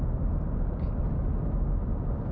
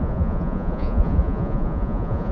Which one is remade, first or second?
second